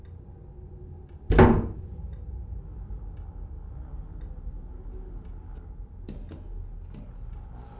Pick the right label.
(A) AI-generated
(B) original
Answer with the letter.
B